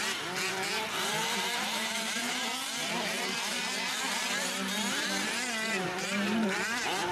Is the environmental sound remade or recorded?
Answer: remade